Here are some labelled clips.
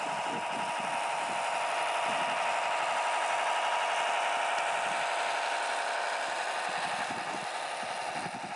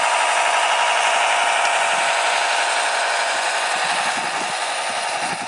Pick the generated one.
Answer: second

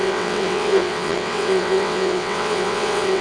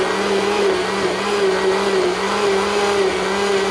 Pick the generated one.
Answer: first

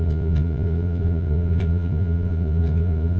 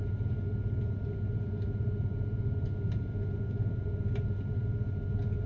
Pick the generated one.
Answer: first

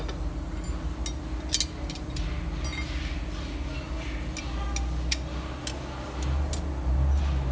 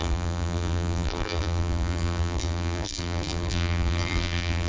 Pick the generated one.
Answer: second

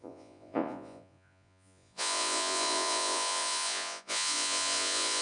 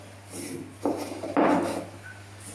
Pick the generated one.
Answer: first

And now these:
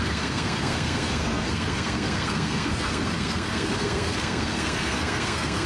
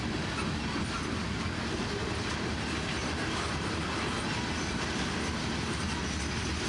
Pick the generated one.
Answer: first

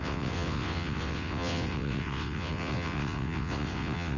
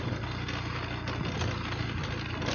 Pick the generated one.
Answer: first